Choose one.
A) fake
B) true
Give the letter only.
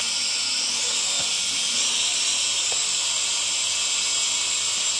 B